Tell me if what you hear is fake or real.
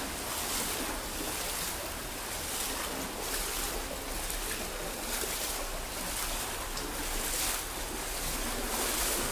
real